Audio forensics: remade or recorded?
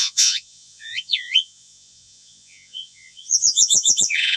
remade